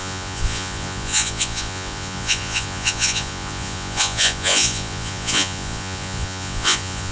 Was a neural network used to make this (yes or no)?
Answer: yes